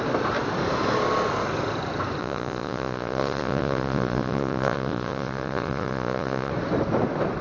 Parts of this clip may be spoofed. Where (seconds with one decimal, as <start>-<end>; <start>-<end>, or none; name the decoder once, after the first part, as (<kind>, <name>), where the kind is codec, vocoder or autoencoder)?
2.2-6.5 (vocoder, Vocos)